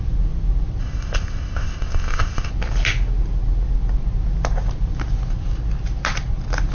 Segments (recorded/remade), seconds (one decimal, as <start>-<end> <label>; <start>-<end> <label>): 0.0-0.8 recorded; 0.8-2.5 remade; 2.5-6.7 recorded